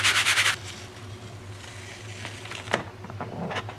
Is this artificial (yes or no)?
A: yes